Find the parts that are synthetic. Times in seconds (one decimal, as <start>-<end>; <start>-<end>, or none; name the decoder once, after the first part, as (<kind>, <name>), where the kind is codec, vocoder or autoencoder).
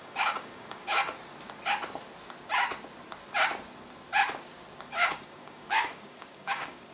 0.0-1.0 (codec, DAC); 5.1-6.9